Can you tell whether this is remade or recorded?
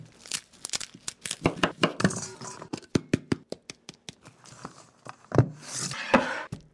recorded